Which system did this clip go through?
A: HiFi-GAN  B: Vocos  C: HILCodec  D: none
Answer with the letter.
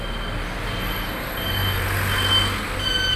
D